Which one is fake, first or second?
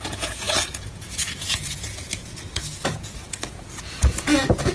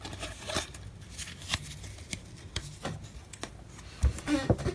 first